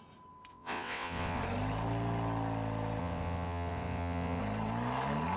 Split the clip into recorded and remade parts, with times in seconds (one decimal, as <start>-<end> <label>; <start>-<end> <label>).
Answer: 0.0-0.5 recorded; 0.5-1.4 remade; 1.4-3.0 recorded; 3.0-4.4 remade; 4.4-5.4 recorded